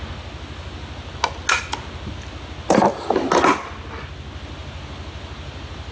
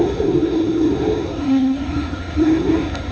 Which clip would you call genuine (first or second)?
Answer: first